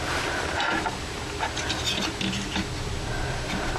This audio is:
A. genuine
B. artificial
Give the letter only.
A